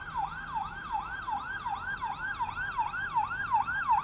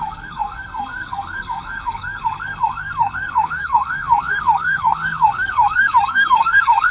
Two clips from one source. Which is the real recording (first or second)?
first